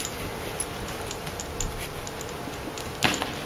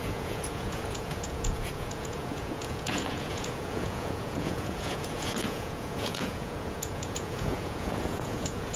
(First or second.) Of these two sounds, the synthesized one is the second